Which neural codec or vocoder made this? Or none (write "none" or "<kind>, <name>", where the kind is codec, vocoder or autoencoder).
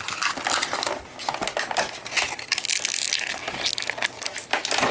none